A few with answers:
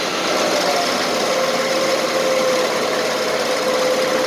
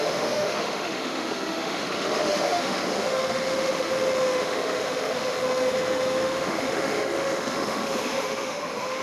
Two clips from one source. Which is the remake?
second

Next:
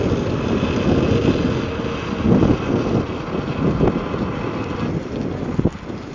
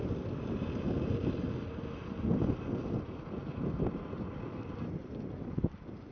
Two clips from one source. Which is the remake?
second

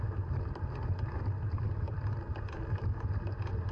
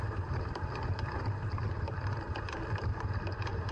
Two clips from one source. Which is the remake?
second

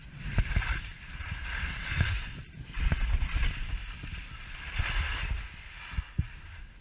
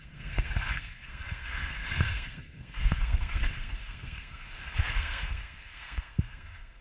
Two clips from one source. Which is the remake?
second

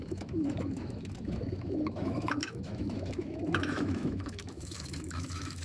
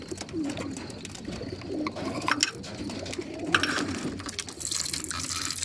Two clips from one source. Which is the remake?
first